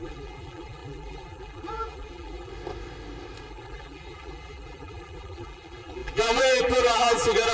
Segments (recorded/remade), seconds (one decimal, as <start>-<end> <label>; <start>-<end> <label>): 0.0-2.5 remade; 2.5-3.5 recorded; 3.5-7.5 remade